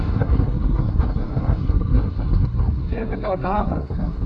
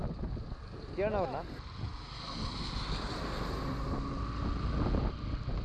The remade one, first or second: first